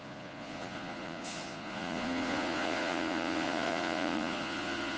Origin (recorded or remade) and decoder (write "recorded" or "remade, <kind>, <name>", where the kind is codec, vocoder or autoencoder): remade, vocoder, Vocos